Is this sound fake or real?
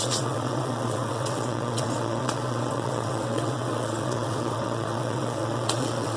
fake